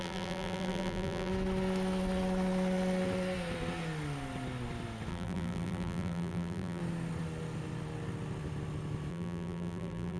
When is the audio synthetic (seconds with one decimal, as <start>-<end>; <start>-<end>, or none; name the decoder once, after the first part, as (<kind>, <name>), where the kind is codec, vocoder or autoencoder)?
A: 0.0-1.3 (vocoder, BigVGAN v2); 5.1-6.8; 9.1-10.2